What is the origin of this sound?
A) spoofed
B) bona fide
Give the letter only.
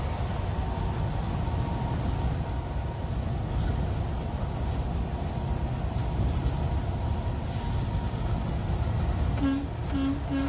B